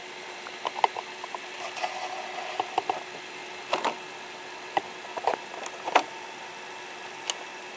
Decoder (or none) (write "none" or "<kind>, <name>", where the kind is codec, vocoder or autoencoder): none